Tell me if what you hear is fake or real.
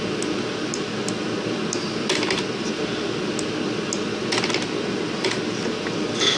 real